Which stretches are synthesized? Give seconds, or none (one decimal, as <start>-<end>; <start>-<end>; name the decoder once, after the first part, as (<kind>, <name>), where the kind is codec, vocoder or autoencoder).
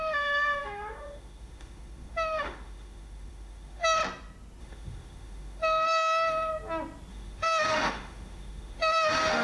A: 0.0-4.0 (autoencoder, DAC-VAE); 4.6-6.5; 7.1-9.4